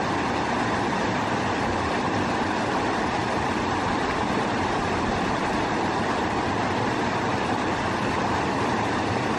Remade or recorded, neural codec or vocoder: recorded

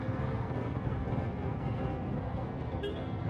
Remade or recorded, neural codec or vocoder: remade, codec, SNAC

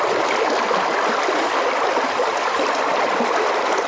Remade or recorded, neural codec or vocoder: recorded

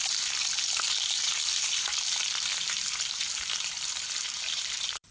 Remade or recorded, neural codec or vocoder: remade, vocoder, BigVGAN v2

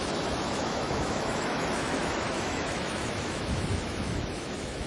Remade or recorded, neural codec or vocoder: remade, autoencoder, DAC-VAE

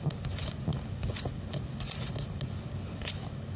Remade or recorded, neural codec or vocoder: recorded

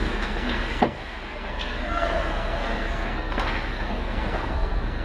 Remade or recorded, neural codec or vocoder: remade, codec, SNAC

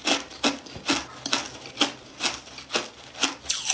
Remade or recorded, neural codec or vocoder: recorded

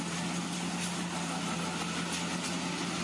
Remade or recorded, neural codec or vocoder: recorded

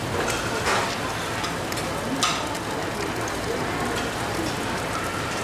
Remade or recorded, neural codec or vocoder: recorded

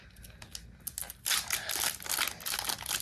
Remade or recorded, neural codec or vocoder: recorded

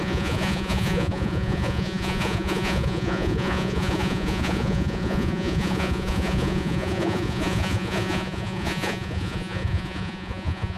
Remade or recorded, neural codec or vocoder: remade, vocoder, Vocos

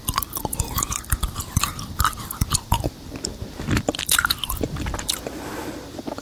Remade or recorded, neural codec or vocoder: remade, vocoder, BigVGAN v2